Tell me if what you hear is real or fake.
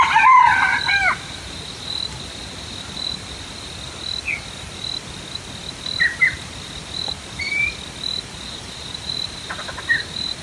real